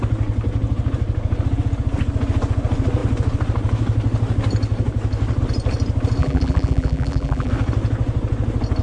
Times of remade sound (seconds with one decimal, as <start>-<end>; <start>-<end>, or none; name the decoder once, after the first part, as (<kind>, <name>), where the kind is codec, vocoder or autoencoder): 6.2-7.5 (vocoder, BigVGAN v2)